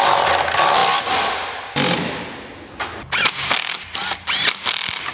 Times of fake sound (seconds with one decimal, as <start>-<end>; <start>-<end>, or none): none